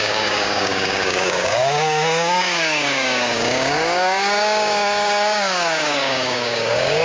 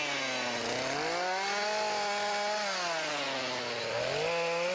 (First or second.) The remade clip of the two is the first